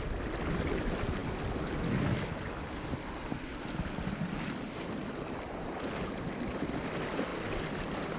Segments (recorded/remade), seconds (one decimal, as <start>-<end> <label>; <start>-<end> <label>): 0.0-8.2 recorded